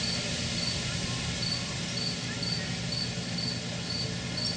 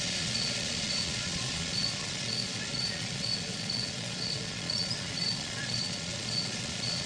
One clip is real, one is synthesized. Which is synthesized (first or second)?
second